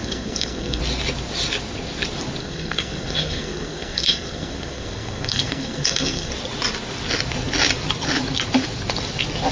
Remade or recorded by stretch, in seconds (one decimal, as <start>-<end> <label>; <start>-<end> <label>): 0.0-0.8 remade; 0.8-2.4 recorded; 2.4-6.3 remade; 6.3-9.5 recorded